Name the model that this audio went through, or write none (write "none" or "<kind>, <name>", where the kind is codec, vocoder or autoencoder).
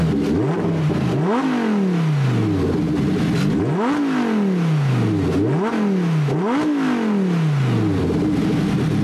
none